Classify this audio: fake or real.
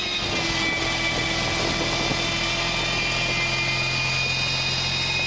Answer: real